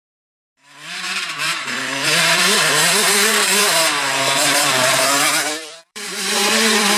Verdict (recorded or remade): remade